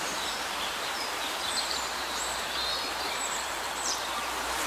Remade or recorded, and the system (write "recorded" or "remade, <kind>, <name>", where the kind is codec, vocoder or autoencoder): remade, vocoder, BigVGAN v2